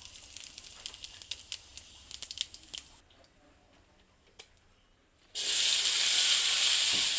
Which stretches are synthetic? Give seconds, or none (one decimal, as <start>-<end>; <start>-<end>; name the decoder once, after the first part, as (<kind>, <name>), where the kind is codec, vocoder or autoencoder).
none